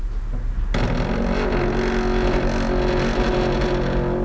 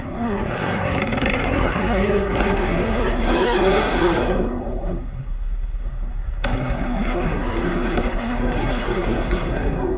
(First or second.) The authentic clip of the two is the first